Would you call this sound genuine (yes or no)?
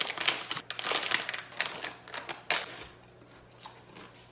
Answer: yes